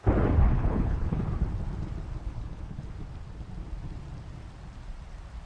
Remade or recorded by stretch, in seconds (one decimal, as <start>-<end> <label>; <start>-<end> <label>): 0.0-0.4 recorded; 0.4-1.2 remade; 1.2-2.2 recorded; 2.2-2.8 remade; 2.8-5.5 recorded